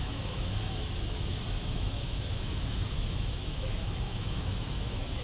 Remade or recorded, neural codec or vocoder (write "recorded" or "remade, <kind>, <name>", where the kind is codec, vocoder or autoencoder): remade, autoencoder, DAC-VAE